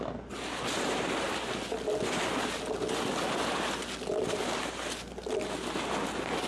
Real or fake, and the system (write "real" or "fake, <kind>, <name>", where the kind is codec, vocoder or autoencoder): real